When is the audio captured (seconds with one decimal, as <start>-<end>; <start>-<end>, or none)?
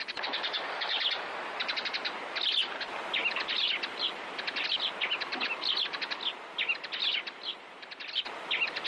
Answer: 0.0-8.9